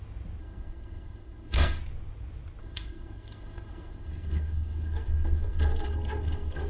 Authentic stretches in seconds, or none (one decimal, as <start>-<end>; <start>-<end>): 0.0-0.4; 1.8-2.6